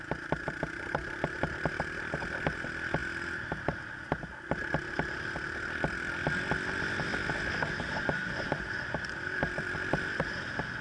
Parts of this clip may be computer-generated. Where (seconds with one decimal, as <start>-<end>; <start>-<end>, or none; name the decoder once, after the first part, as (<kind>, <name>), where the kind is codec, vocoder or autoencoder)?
0.0-3.0 (vocoder, BigVGAN v2); 8.3-10.8